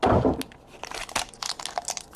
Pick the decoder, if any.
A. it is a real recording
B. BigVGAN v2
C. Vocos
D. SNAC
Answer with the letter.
A